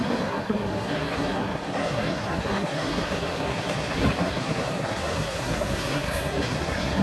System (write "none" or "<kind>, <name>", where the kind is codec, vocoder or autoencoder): codec, SNAC